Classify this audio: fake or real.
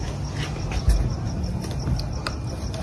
real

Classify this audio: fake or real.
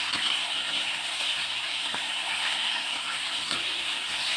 fake